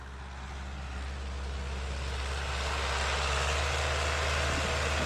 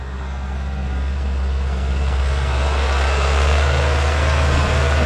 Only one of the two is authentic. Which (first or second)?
first